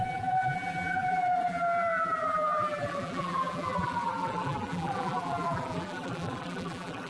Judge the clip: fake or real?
fake